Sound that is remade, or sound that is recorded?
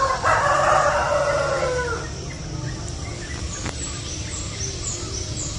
recorded